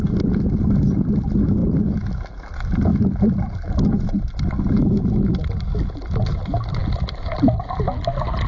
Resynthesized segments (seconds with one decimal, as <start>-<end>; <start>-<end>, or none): none